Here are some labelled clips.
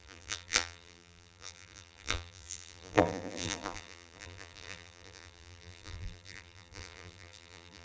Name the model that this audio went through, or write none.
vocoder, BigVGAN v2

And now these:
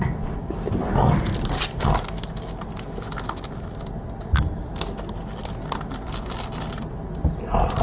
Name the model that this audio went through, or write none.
none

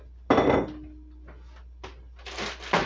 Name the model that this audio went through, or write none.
none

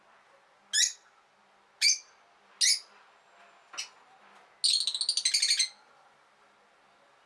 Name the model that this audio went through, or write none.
none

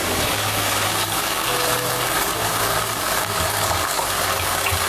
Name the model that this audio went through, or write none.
codec, DAC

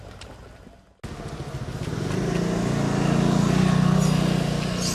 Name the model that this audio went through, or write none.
none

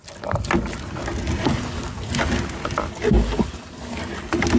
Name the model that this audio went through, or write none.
none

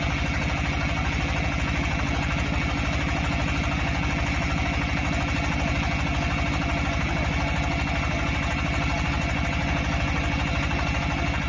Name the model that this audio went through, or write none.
none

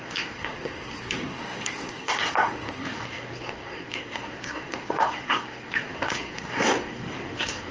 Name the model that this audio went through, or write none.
codec, SNAC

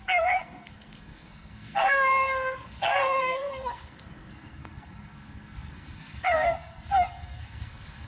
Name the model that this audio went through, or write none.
codec, SNAC